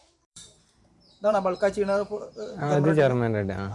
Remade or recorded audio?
remade